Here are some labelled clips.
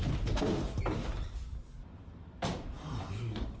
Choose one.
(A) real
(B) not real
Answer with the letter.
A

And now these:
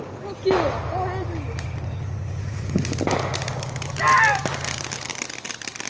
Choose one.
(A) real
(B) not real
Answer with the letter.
A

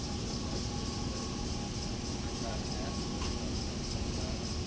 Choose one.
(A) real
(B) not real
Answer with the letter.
A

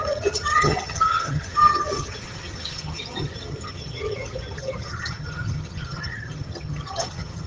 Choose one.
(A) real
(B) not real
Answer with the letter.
B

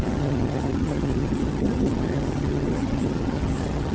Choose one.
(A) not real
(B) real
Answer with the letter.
A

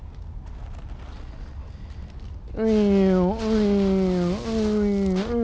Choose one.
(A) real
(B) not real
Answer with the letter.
A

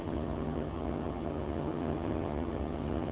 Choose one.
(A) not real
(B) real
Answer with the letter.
A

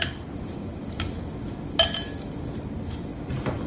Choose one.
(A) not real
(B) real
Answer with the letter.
B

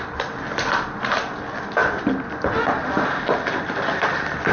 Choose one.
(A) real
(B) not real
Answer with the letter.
A